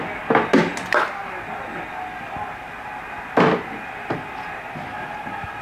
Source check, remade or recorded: recorded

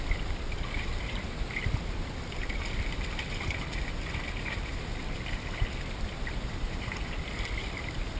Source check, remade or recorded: recorded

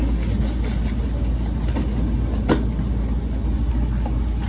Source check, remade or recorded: recorded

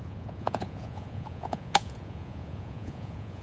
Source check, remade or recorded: remade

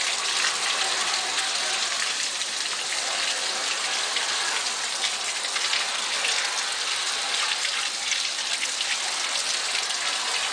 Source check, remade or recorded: recorded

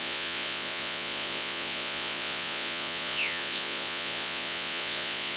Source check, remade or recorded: remade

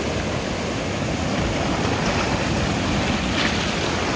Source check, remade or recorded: recorded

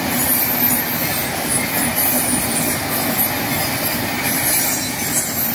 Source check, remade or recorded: recorded